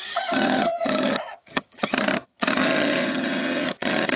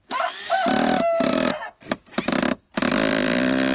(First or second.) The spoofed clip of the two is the first